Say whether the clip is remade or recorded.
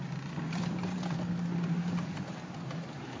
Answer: recorded